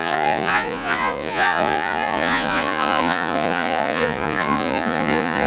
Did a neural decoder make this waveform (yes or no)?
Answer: yes